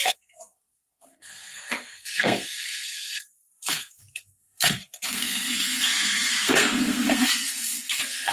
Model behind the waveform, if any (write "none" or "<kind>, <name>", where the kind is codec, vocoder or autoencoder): codec, SNAC